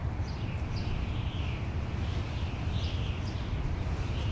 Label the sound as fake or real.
real